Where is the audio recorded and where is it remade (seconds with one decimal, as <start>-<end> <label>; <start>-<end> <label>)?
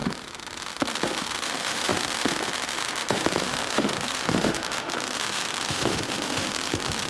0.0-7.1 remade